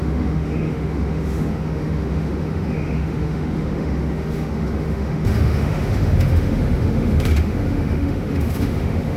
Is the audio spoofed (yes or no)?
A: yes